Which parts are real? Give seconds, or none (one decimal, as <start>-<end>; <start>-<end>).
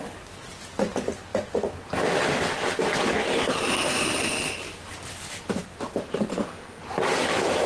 0.0-6.3; 6.8-7.7